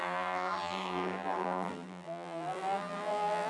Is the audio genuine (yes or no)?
no